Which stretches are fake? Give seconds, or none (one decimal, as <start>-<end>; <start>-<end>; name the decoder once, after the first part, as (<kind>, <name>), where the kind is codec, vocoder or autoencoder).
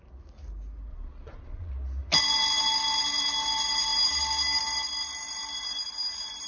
0.9-1.7 (vocoder, Vocos)